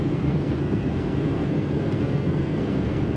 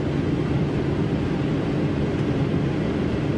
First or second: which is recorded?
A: second